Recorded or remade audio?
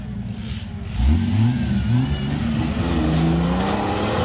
recorded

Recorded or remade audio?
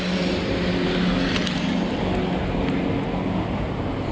recorded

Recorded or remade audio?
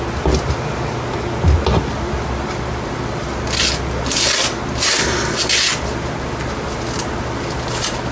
recorded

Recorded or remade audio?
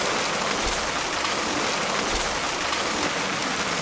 recorded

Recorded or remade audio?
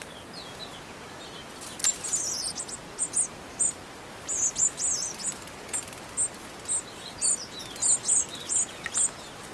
recorded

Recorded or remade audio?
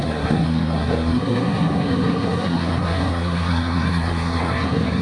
remade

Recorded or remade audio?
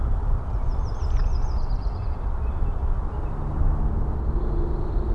recorded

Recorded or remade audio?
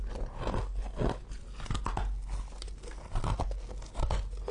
recorded